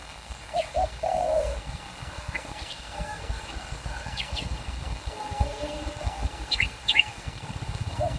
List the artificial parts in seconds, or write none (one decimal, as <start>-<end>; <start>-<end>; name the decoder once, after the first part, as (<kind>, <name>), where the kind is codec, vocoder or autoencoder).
0.0-8.2 (codec, SNAC)